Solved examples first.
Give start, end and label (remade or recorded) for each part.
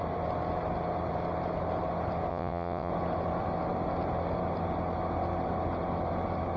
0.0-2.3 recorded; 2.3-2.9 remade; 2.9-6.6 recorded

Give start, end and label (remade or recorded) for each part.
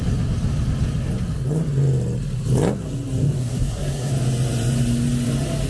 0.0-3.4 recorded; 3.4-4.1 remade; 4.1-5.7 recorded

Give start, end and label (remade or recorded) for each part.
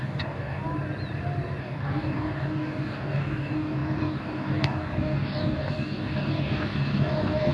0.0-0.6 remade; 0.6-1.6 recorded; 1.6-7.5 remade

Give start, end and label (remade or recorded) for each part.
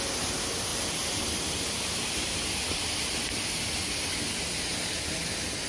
0.0-5.7 recorded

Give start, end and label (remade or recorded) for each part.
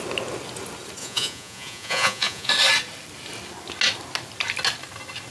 0.0-1.0 recorded; 1.0-2.5 remade; 2.5-5.3 recorded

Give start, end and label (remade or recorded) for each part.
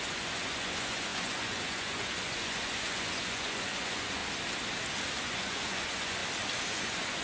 0.0-4.2 remade; 4.2-5.2 recorded; 5.2-6.2 remade; 6.2-6.7 recorded; 6.7-7.2 remade